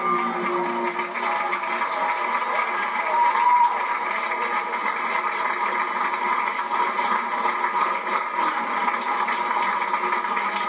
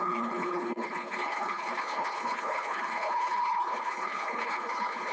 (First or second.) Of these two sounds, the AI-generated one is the second